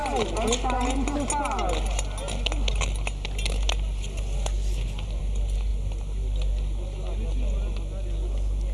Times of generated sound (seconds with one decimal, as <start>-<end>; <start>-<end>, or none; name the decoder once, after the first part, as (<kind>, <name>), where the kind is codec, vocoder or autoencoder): none

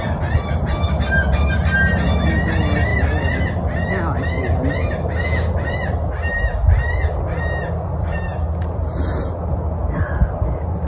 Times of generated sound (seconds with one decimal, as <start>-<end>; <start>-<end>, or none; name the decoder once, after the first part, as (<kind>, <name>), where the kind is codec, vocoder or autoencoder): none

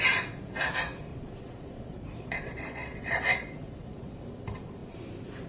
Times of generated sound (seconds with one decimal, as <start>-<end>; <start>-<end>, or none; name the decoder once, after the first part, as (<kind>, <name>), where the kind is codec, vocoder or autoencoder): 1.1-4.2 (vocoder, Vocos)

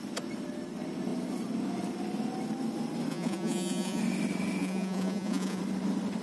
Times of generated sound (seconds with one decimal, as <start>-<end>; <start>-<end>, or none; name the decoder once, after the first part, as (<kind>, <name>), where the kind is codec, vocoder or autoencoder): 3.1-4.0 (vocoder, Vocos); 4.6-5.6

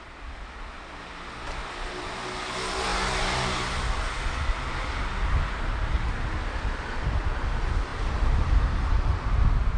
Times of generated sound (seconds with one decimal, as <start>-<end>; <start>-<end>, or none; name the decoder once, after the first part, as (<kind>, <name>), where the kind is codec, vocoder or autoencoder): none

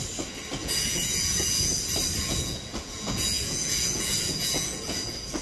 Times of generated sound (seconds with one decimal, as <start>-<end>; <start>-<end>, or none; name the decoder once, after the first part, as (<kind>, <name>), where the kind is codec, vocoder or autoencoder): 0.6-1.7 (vocoder, Vocos); 2.2-5.4

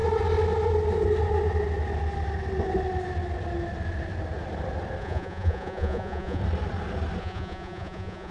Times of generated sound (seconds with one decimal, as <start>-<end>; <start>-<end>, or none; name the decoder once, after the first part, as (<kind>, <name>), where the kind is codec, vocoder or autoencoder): 5.0-6.4 (vocoder, Vocos); 7.2-8.3